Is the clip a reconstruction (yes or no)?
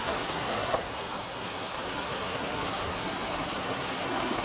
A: yes